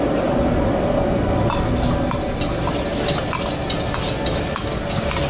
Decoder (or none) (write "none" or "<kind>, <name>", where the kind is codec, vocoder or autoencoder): none